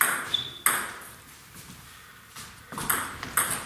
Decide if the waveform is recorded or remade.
recorded